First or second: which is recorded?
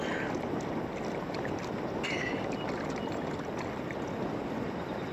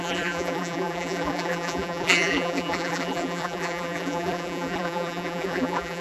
first